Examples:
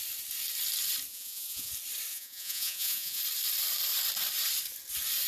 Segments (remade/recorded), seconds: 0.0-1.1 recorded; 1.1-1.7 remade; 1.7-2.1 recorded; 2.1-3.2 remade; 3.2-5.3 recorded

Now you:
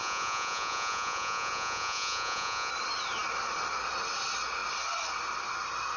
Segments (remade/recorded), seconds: 0.0-2.7 remade; 2.7-6.0 recorded

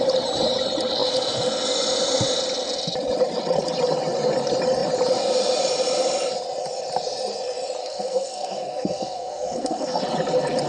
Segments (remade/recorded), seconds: 0.0-7.8 recorded; 7.8-10.0 remade; 10.0-10.7 recorded